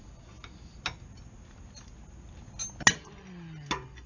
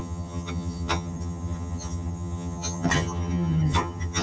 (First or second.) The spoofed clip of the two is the second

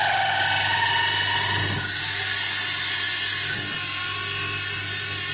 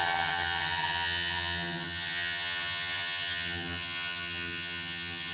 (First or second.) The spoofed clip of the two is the second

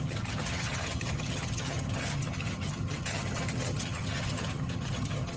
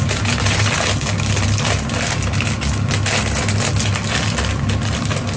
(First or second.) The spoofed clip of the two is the first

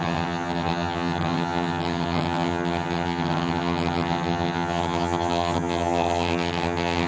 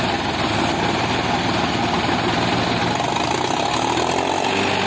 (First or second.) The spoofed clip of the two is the first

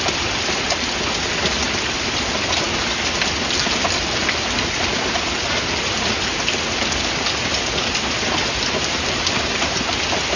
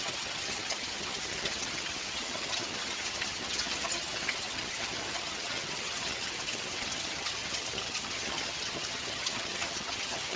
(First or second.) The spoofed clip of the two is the second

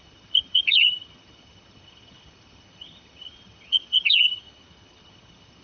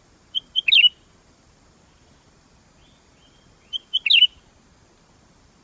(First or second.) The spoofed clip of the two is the first